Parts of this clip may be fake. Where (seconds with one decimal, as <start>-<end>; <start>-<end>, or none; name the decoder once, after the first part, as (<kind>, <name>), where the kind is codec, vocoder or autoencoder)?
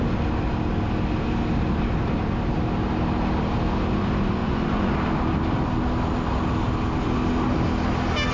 4.4-4.9 (vocoder, Vocos)